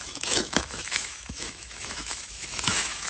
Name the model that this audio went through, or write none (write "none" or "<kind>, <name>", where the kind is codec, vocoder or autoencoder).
autoencoder, DAC-VAE